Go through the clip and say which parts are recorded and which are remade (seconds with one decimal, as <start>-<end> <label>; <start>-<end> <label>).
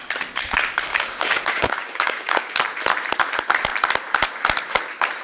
0.0-0.9 recorded; 0.9-2.5 remade; 2.5-5.2 recorded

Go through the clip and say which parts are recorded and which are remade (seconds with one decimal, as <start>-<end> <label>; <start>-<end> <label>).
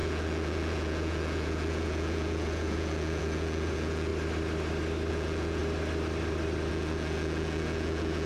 0.0-4.1 remade; 4.1-5.1 recorded; 5.1-5.6 remade; 5.6-6.7 recorded; 6.7-8.3 remade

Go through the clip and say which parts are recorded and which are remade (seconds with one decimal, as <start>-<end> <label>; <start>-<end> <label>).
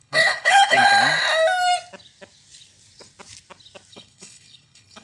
0.0-0.9 remade; 0.9-3.9 recorded; 3.9-5.0 remade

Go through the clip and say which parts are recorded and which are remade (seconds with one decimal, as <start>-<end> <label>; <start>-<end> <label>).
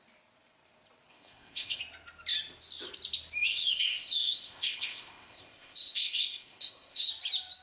0.0-1.1 recorded; 1.1-1.8 remade; 1.8-3.5 recorded; 3.5-7.1 remade; 7.1-7.6 recorded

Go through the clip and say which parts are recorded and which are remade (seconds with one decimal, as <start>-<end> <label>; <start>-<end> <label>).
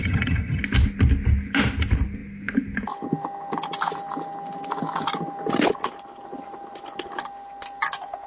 0.0-0.6 remade; 0.6-8.3 recorded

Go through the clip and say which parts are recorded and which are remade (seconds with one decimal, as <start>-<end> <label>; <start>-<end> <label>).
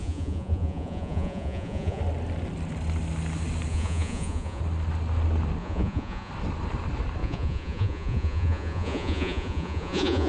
0.0-2.0 remade; 2.0-3.7 recorded; 3.7-4.6 remade; 4.6-5.6 recorded; 5.6-6.3 remade; 6.3-7.2 recorded; 7.2-10.3 remade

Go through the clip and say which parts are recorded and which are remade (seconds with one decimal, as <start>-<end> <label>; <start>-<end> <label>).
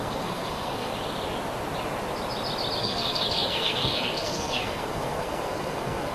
0.0-0.9 remade; 0.9-2.8 recorded; 2.8-6.1 remade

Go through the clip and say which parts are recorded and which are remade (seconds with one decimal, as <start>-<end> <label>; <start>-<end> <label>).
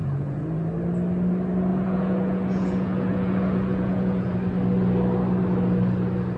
0.0-0.6 remade; 0.6-1.7 recorded; 1.7-4.3 remade; 4.3-6.4 recorded